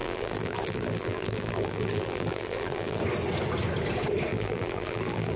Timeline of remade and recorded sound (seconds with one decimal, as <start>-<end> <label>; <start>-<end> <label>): 0.0-3.0 remade; 3.0-4.3 recorded; 4.3-5.4 remade